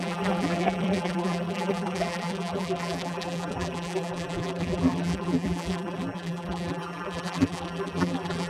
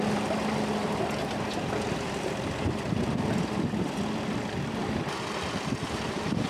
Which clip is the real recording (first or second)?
second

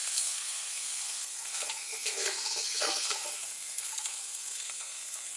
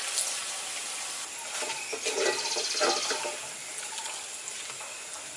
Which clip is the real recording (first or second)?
second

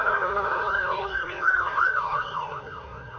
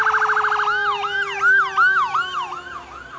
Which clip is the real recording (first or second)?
second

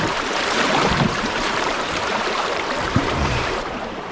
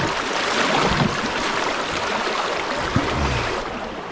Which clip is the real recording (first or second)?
second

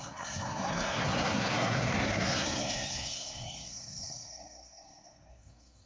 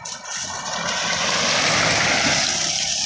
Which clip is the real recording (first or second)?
second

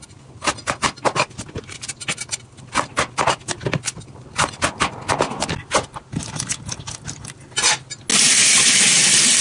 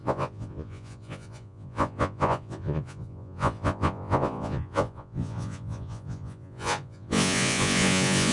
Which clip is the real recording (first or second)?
first